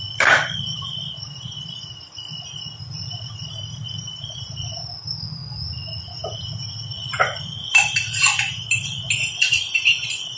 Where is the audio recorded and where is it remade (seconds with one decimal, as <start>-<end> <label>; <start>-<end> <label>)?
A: 0.0-5.4 remade; 5.4-6.0 recorded; 6.0-10.4 remade